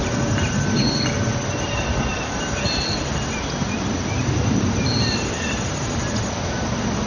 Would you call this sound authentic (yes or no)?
yes